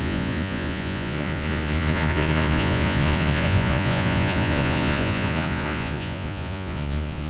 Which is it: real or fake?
fake